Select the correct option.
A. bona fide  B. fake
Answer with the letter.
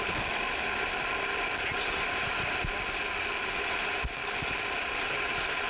B